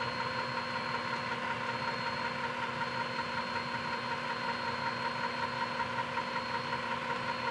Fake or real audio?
real